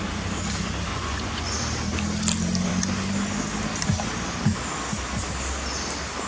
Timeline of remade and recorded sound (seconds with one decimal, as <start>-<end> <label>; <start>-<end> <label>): 0.0-0.9 recorded; 0.9-1.5 remade; 1.5-6.3 recorded